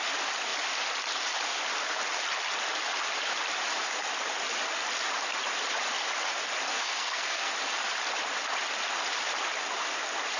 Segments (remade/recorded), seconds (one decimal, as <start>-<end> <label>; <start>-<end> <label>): 0.0-6.7 recorded; 6.7-7.5 remade; 7.5-10.4 recorded